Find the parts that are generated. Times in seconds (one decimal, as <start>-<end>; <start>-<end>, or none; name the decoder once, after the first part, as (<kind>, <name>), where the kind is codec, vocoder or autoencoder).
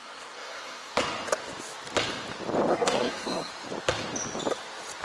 0.0-0.9 (codec, SNAC); 2.7-3.5